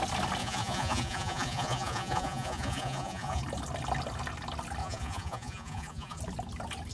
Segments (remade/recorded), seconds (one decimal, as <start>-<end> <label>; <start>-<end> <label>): 0.0-0.4 recorded; 0.4-3.4 remade; 3.4-4.8 recorded; 4.8-6.2 remade; 6.2-6.9 recorded